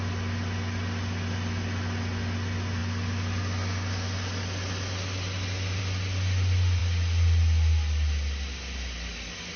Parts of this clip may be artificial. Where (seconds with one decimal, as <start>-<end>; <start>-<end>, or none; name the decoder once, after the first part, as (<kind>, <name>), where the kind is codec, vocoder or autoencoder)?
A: none